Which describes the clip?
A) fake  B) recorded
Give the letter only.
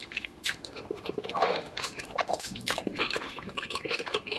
A